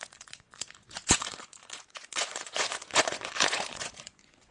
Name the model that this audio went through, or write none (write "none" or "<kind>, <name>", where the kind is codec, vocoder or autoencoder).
vocoder, Vocos